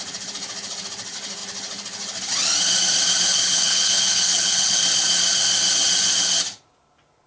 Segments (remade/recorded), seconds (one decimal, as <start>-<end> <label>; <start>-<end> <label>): 0.0-3.3 recorded; 3.3-4.8 remade; 4.8-7.3 recorded